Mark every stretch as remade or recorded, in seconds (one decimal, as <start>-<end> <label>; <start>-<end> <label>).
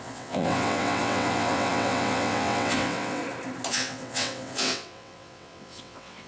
0.0-3.2 remade; 3.2-3.7 recorded; 3.7-6.3 remade